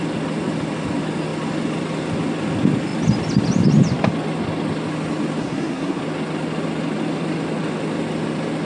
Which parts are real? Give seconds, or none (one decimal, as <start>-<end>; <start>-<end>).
0.0-5.4; 6.0-8.6